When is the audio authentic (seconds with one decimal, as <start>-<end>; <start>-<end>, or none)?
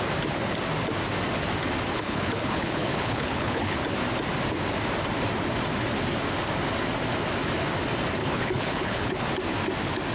0.0-1.9; 3.8-8.2; 9.2-10.1